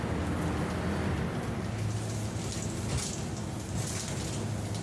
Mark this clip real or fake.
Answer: real